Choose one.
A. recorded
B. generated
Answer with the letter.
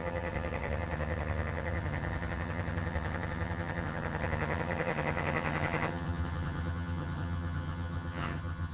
B